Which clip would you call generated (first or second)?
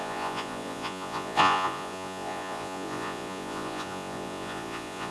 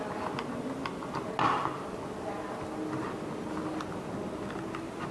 first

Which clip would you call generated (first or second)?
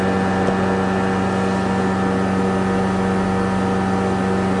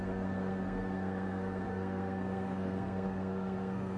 second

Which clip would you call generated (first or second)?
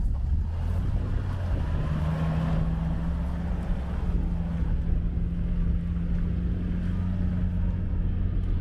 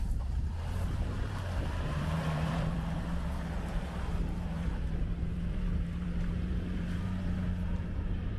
second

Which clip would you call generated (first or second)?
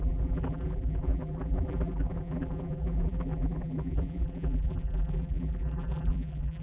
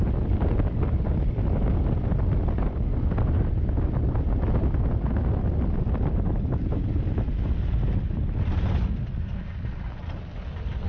first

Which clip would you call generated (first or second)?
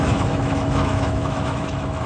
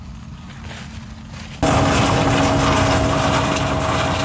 first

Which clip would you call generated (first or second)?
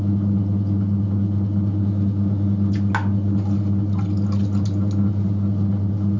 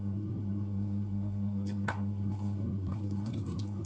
second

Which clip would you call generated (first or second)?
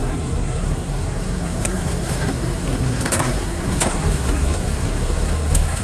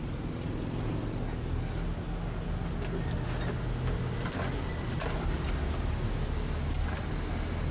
first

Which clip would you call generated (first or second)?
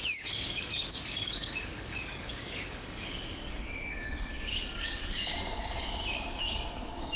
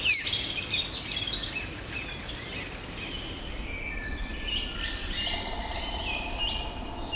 first